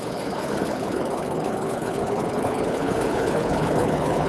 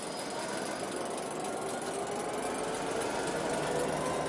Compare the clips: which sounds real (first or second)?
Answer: second